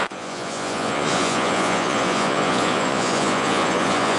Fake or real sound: fake